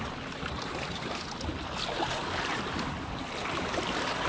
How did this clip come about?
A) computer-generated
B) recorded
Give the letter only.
B